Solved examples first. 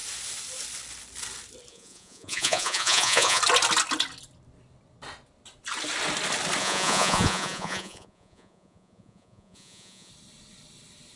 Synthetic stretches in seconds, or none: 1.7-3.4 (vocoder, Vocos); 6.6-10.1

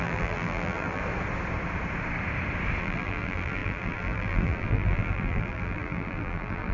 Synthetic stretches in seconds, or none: 0.0-1.0 (vocoder, BigVGAN v2); 2.8-6.7